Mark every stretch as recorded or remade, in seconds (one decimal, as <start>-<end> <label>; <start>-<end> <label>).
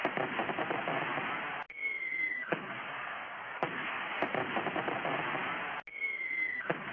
0.0-2.3 recorded; 2.3-4.1 remade; 4.1-6.9 recorded